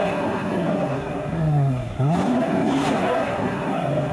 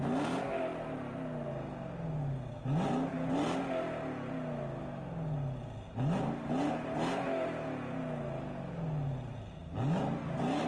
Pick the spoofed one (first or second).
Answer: first